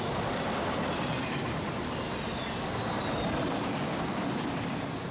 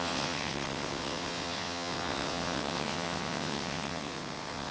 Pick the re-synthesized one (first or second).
second